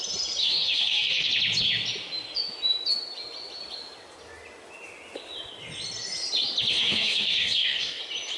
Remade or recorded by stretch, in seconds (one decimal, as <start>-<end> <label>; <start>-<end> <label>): 0.0-0.4 recorded; 0.4-1.3 remade; 1.3-6.7 recorded; 6.7-8.0 remade; 8.0-8.4 recorded